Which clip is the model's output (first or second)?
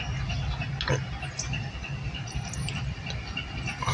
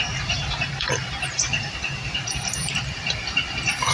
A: second